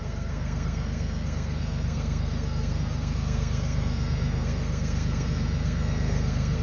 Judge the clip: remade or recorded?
remade